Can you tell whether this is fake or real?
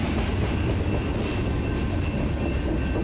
real